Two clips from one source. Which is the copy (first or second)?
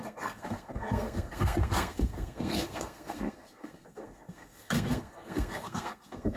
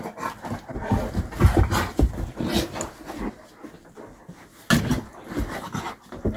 first